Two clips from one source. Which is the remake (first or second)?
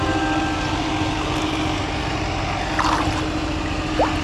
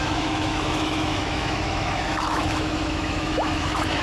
second